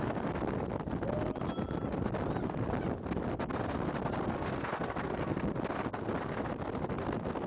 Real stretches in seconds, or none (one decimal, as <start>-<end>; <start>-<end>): 0.0-7.5